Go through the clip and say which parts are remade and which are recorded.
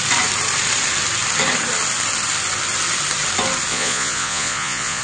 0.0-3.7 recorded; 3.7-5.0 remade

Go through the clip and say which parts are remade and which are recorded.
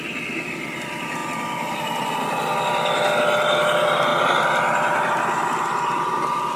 0.0-6.6 recorded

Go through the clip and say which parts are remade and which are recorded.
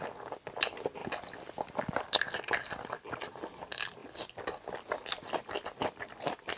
0.0-6.6 recorded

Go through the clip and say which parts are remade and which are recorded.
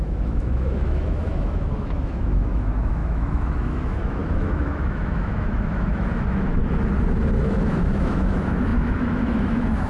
0.0-6.6 remade; 6.6-7.4 recorded; 7.4-9.9 remade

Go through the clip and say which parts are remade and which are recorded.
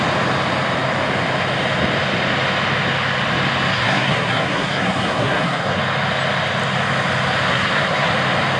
0.0-3.7 recorded; 3.7-5.8 remade; 5.8-7.5 recorded; 7.5-8.1 remade; 8.1-8.6 recorded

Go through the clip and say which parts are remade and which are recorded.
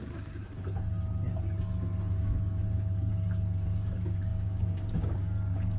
0.0-0.5 remade; 0.5-1.6 recorded; 1.6-5.8 remade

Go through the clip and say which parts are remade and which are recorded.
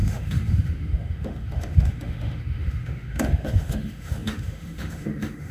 0.0-5.5 remade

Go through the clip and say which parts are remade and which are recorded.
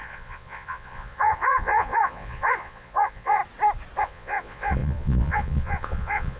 0.0-3.4 remade; 3.4-4.0 recorded; 4.0-6.4 remade